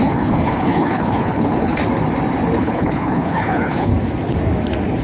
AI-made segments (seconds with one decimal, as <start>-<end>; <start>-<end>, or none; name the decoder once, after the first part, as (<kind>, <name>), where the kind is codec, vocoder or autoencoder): 0.0-1.8 (codec, HILCodec); 2.6-3.9